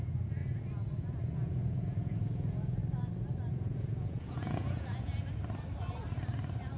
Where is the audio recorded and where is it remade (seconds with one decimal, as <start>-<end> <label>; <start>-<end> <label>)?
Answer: 0.0-2.8 remade; 2.8-3.5 recorded; 3.5-5.1 remade; 5.1-6.8 recorded